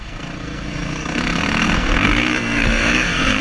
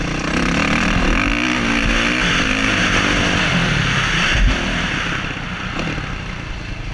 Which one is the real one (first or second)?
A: second